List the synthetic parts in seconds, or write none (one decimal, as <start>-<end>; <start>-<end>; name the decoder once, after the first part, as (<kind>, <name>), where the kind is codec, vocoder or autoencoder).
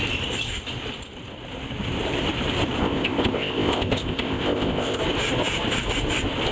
2.8-5.0 (codec, ZipCodec)